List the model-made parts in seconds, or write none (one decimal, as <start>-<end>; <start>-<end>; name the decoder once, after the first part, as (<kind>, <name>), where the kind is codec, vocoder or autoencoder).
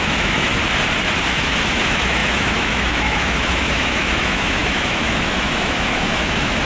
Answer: 0.0-0.5 (autoencoder, DAC-VAE); 1.3-6.6